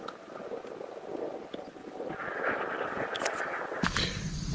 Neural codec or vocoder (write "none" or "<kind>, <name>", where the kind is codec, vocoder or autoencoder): none